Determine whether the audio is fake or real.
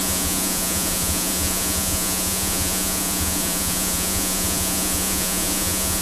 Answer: fake